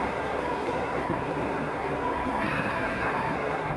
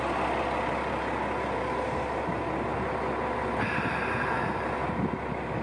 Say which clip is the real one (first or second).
second